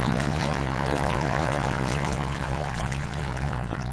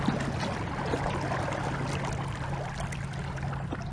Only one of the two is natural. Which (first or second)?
second